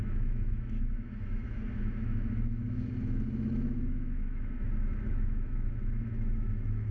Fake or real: fake